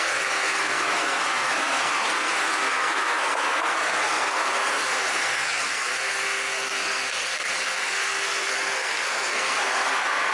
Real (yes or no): no